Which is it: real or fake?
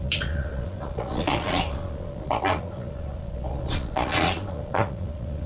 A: fake